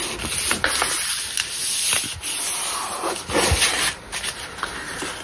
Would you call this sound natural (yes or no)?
yes